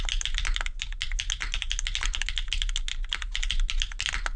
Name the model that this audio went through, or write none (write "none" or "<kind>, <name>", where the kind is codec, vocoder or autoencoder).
none